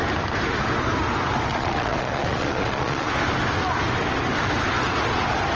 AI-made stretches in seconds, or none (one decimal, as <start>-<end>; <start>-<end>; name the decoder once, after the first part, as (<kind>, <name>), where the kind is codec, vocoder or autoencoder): 1.5-3.1 (vocoder, Vocos)